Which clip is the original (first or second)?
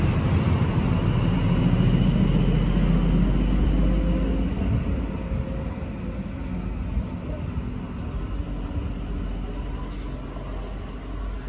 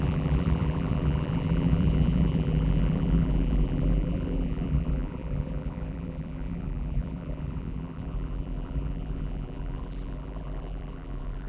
first